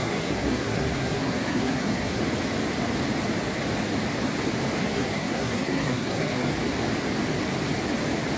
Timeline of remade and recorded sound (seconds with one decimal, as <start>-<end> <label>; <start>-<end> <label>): 0.0-2.2 remade; 2.2-4.8 recorded; 4.8-6.5 remade; 6.5-8.4 recorded